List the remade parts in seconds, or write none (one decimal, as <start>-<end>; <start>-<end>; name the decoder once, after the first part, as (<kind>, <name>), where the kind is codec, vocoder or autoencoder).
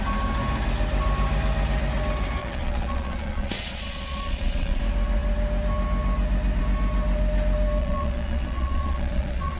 2.4-4.8 (vocoder, Vocos); 7.8-9.6